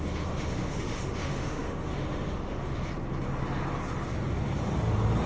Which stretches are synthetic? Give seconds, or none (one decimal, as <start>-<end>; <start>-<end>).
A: 0.0-2.9